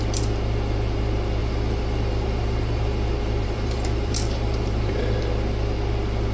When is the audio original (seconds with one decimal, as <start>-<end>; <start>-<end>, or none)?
0.0-1.4; 5.2-6.3